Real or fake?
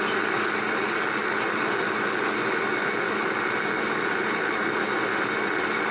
real